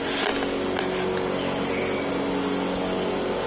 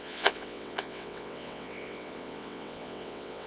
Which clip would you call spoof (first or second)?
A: second